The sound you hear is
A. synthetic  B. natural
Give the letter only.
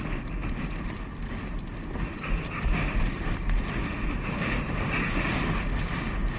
B